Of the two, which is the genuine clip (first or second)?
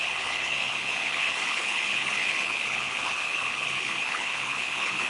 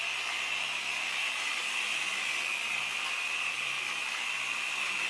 second